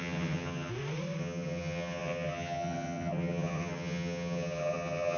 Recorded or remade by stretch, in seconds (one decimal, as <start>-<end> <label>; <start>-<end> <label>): 0.0-0.7 remade; 0.7-1.2 recorded; 1.2-5.2 remade